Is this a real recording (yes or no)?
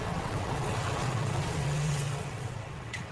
no